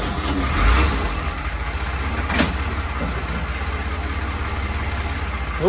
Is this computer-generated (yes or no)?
no